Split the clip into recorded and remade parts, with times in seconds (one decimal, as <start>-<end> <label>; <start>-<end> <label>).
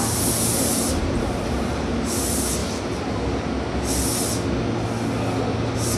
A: 0.0-0.5 recorded; 0.5-2.1 remade; 2.1-6.0 recorded